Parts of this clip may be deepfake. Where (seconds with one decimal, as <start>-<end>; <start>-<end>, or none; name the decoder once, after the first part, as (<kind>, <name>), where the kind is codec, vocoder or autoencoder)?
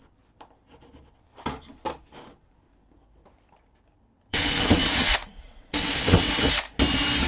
4.3-6.3 (vocoder, WaveNeXt)